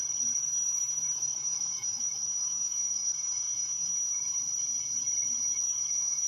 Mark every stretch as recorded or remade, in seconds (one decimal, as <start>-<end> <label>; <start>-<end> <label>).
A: 0.0-0.4 recorded; 0.4-4.2 remade; 4.2-5.6 recorded; 5.6-6.3 remade